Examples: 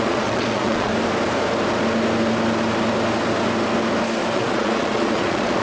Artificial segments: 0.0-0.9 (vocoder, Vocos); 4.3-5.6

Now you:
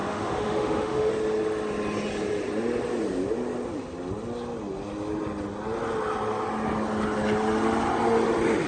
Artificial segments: 0.0-1.1 (autoencoder, DAC-VAE)